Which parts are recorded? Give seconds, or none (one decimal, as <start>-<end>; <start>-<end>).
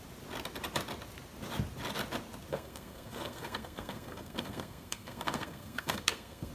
0.0-2.5